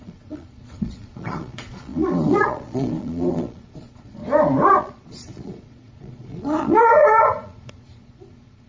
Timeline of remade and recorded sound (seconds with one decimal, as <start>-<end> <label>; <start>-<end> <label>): 0.0-4.2 remade; 4.2-4.8 recorded; 4.8-8.7 remade